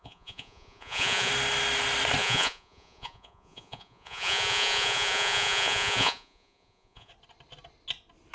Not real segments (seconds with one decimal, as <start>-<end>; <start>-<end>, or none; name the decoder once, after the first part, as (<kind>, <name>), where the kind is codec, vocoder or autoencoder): 0.0-1.3 (vocoder, Vocos); 2.2-7.1